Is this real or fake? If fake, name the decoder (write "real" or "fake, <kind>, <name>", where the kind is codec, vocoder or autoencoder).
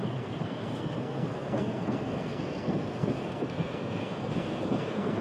fake, codec, SNAC